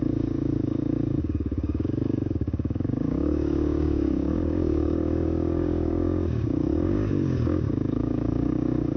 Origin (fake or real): fake